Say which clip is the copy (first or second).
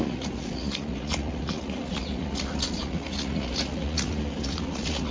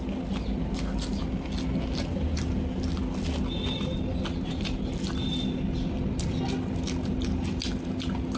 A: first